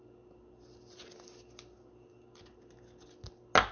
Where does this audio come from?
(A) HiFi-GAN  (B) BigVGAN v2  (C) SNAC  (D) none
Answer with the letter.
D